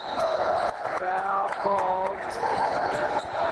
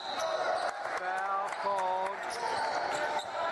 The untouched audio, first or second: second